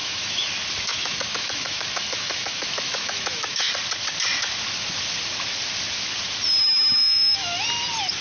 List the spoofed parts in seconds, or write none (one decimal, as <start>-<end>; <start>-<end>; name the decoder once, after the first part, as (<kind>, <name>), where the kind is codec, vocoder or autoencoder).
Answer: 0.0-0.5 (autoencoder, DAC-VAE); 0.9-3.7; 6.6-7.6